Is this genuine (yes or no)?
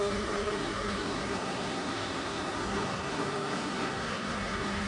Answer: no